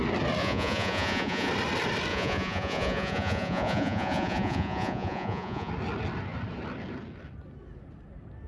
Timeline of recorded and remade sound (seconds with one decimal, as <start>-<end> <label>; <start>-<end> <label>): 0.0-0.4 recorded; 0.4-1.5 remade; 1.5-2.1 recorded; 2.1-5.7 remade; 5.7-8.5 recorded